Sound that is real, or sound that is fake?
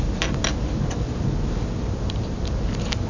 real